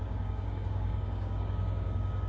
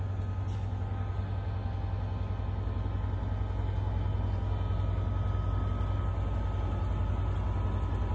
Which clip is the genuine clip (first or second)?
second